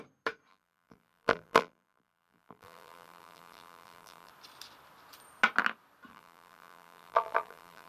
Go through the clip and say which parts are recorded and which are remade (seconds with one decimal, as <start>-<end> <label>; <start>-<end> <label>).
0.0-0.5 recorded; 0.5-4.3 remade; 4.3-6.1 recorded; 6.1-7.9 remade